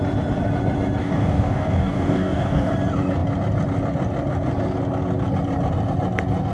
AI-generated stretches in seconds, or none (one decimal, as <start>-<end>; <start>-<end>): 1.0-2.7